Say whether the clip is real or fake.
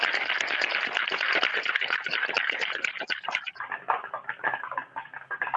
real